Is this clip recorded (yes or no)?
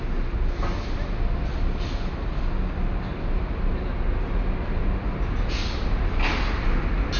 yes